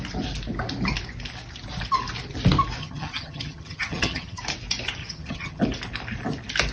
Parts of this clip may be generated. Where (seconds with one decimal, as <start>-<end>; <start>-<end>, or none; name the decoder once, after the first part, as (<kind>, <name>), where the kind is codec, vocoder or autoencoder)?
2.8-4.4 (vocoder, HiFi-GAN); 5.0-5.6